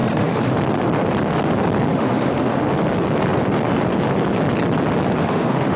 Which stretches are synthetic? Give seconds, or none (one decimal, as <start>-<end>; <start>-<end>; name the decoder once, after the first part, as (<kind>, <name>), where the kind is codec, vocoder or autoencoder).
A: 0.0-0.5 (autoencoder, DAC-VAE); 1.9-2.6; 5.2-5.8